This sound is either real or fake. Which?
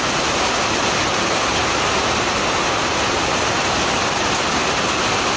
real